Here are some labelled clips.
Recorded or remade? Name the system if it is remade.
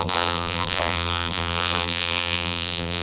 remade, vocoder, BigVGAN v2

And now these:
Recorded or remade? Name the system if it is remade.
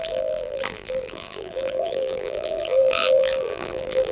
remade, vocoder, BigVGAN v2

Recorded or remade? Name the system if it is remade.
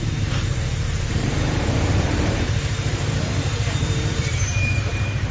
remade, vocoder, BigVGAN v2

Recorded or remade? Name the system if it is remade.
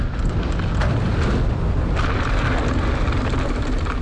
recorded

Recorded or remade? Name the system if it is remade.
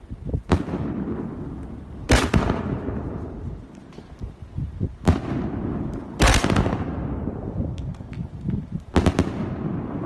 recorded